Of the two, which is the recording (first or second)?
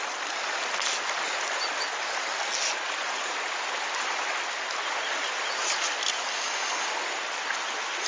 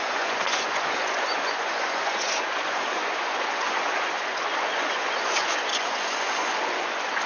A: first